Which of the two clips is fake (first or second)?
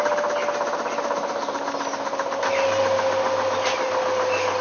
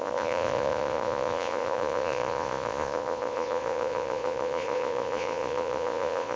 second